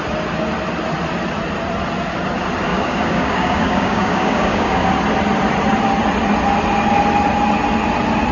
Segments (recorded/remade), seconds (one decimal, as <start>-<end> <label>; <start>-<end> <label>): 0.0-2.7 recorded; 2.7-4.9 remade; 4.9-8.3 recorded